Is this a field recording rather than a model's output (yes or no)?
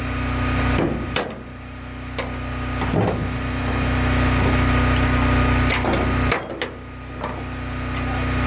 yes